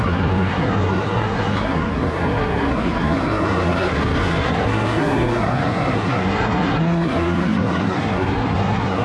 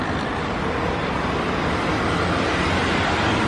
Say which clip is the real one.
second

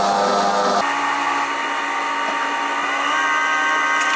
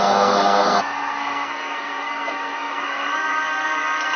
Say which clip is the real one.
first